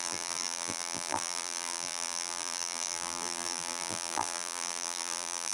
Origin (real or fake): fake